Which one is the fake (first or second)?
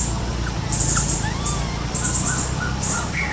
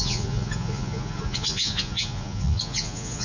second